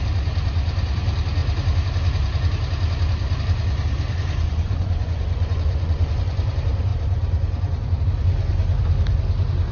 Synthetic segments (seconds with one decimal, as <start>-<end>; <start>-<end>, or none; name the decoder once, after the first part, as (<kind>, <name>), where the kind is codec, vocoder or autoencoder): 4.4-6.5 (vocoder, Vocos)